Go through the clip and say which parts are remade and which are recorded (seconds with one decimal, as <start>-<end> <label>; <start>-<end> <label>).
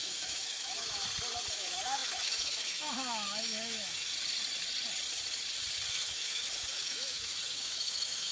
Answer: 0.0-1.0 remade; 1.0-1.5 recorded; 1.5-4.1 remade; 4.1-5.9 recorded; 5.9-8.3 remade